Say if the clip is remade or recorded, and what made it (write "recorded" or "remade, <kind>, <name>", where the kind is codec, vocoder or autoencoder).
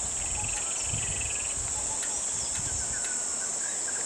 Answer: recorded